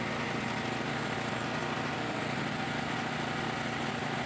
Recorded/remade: recorded